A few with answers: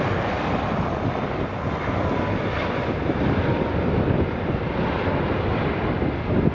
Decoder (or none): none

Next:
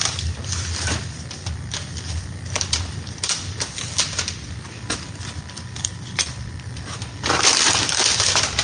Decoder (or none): vocoder, BigVGAN v2